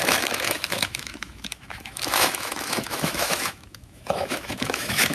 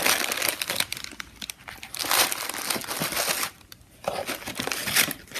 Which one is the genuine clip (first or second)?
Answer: second